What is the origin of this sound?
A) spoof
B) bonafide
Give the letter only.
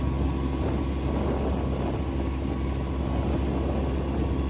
B